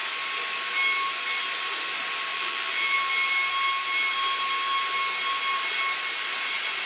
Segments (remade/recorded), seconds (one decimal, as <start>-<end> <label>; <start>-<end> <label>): 0.0-2.3 recorded; 2.3-3.3 remade; 3.3-6.9 recorded